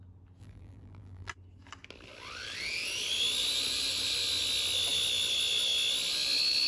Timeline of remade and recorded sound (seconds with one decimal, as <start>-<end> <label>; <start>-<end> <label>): 0.0-0.4 recorded; 0.4-1.3 remade; 1.3-6.7 recorded